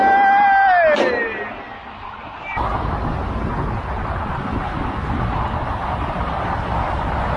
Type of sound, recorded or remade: recorded